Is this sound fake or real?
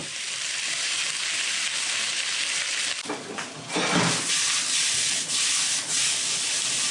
fake